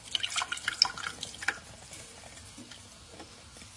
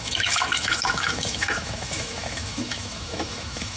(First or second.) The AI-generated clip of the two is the second